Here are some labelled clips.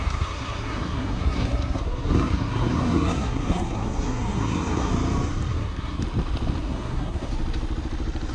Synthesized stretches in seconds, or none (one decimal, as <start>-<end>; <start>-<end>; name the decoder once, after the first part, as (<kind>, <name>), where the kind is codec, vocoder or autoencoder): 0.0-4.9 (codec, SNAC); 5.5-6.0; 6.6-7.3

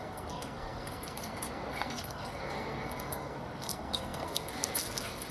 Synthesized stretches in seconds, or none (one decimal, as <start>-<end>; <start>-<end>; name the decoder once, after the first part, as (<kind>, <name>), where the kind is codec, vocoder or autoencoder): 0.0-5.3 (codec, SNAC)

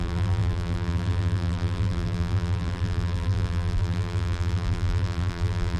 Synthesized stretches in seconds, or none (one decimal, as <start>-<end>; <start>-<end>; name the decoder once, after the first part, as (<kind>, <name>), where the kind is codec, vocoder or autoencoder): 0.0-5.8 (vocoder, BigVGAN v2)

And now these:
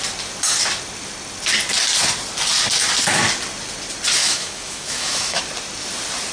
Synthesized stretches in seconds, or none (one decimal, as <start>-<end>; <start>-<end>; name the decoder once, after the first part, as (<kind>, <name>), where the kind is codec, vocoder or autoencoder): 4.2-5.4 (autoencoder, DAC-VAE)

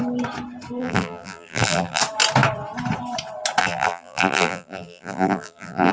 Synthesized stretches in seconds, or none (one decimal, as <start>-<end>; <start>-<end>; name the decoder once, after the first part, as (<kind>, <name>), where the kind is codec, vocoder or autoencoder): 0.8-2.0 (vocoder, BigVGAN v2); 3.6-5.9

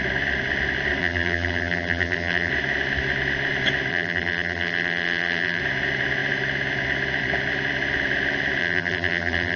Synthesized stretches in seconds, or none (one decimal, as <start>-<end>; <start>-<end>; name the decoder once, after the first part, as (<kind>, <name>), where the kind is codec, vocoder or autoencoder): 1.0-2.5 (vocoder, BigVGAN v2); 3.9-5.6; 8.6-9.6

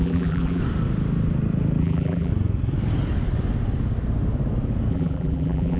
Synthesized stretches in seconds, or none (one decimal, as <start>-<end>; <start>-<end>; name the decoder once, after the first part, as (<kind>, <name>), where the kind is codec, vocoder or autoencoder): 0.0-0.6 (vocoder, BigVGAN v2); 1.8-2.3; 4.9-5.8

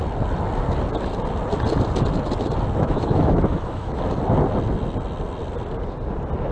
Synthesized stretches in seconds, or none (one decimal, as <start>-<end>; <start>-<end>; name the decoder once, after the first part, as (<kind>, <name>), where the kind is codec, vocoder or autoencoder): 2.8-4.0 (autoencoder, DAC-VAE)